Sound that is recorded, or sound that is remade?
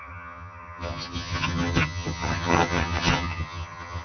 remade